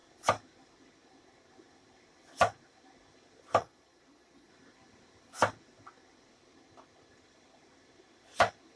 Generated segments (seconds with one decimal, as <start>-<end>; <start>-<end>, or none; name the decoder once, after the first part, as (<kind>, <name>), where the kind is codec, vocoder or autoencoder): 3.6-4.5 (vocoder, Vocos)